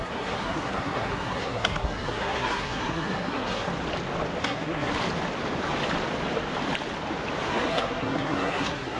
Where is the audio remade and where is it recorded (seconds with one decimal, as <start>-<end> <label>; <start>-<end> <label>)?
0.0-3.7 remade; 3.7-4.4 recorded; 4.4-4.9 remade; 4.9-7.5 recorded; 7.5-9.0 remade